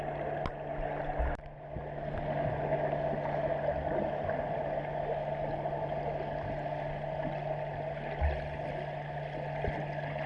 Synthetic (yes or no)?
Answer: no